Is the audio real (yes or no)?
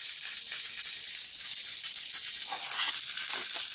yes